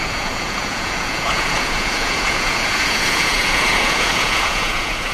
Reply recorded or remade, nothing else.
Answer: remade